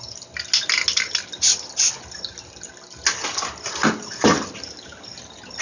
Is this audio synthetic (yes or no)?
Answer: no